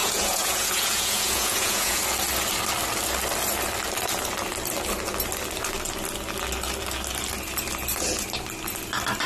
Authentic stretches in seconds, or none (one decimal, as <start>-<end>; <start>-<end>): 2.0-9.3